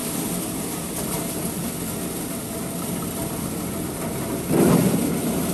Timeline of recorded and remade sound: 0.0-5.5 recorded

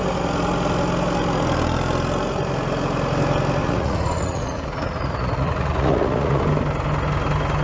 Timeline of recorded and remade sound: 0.0-3.6 recorded; 3.6-6.4 remade; 6.4-7.6 recorded

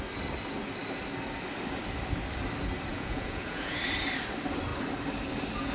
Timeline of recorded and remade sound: 0.0-2.9 recorded; 2.9-3.8 remade; 3.8-5.7 recorded

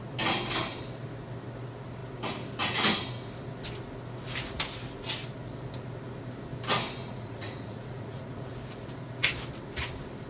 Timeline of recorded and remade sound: 0.0-7.0 recorded; 7.0-8.5 remade; 8.5-10.3 recorded

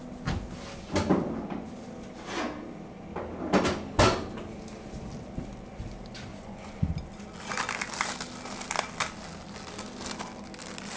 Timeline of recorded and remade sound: 0.0-6.3 recorded; 6.3-6.9 remade; 6.9-11.0 recorded

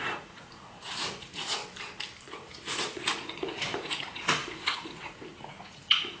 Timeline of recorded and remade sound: 0.0-1.6 remade; 1.6-2.3 recorded; 2.3-6.2 remade

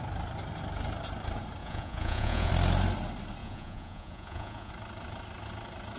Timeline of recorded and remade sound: 0.0-1.6 recorded; 1.6-2.5 remade; 2.5-3.4 recorded; 3.4-4.7 remade; 4.7-6.0 recorded